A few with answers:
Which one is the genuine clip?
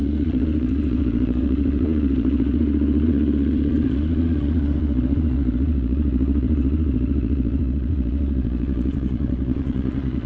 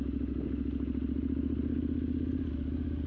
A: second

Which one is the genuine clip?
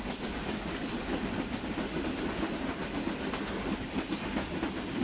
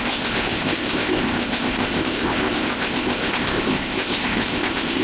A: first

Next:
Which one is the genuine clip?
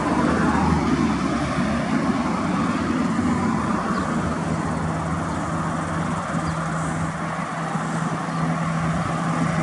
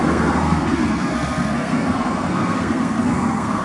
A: first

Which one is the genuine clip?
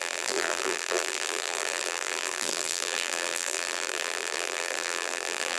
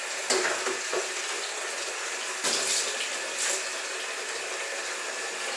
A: second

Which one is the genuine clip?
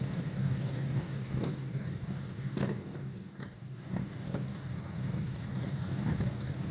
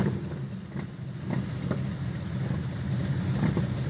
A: second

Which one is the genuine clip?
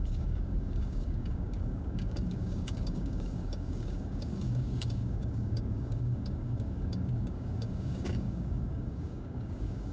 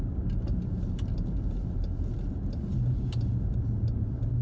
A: second